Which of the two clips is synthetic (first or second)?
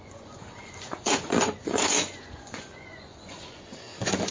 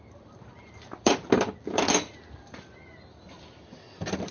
first